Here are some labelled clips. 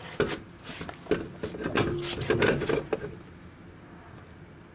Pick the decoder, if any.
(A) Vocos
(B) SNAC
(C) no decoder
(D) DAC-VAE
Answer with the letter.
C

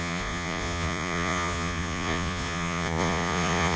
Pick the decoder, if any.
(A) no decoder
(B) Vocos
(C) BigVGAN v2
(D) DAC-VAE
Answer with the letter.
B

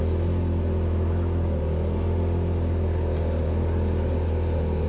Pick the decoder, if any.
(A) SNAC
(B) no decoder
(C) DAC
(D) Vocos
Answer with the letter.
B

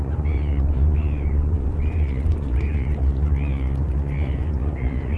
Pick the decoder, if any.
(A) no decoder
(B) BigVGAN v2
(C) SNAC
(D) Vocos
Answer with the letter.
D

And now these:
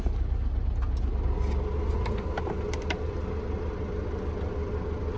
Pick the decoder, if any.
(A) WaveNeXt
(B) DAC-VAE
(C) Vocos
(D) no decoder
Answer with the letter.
D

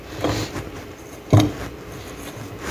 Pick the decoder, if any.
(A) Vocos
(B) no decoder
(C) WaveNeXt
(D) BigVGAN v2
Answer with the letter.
B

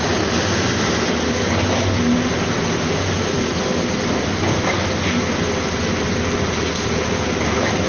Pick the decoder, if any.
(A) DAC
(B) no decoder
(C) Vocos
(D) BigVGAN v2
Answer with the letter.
B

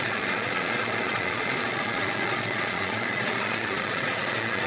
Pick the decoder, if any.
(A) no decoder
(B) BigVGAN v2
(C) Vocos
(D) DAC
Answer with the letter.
C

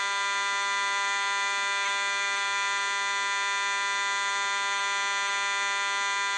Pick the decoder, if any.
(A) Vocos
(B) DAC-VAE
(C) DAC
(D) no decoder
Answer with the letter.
D